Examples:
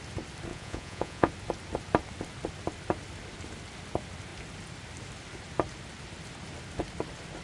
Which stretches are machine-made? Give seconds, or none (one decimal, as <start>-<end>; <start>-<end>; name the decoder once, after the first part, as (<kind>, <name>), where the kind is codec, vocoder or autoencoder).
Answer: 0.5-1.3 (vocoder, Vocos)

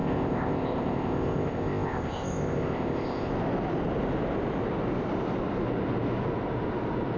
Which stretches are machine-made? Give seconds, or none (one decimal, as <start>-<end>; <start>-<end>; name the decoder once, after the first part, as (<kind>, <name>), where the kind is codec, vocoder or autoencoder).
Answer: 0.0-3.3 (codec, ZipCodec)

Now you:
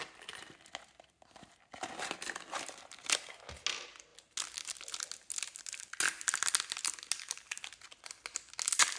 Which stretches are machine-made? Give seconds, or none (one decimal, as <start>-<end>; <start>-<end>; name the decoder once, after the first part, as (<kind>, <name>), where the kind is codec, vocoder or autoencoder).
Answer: none

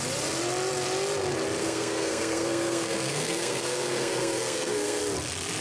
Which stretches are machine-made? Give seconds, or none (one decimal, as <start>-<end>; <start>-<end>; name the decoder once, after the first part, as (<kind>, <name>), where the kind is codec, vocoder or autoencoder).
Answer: 1.6-5.0 (codec, SNAC)

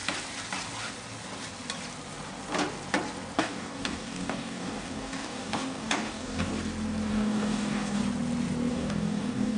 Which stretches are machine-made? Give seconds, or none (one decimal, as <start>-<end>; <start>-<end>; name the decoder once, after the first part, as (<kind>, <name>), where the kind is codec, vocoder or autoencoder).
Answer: 3.4-6.5 (codec, DAC); 7.1-8.0; 8.7-9.6

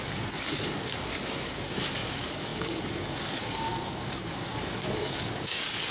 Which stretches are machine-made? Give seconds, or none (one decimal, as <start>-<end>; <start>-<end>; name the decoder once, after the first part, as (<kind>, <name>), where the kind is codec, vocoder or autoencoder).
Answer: 0.0-5.9 (codec, DAC)